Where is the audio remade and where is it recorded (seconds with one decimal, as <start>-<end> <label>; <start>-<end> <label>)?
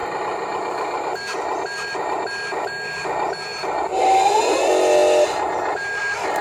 0.0-6.4 recorded